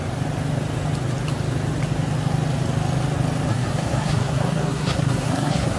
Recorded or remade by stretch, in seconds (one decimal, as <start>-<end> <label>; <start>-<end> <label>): 0.0-3.5 recorded; 3.5-5.8 remade